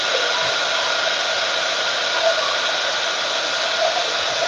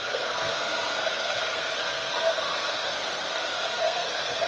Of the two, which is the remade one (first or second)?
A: second